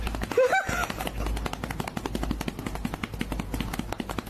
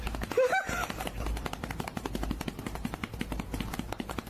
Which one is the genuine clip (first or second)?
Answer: first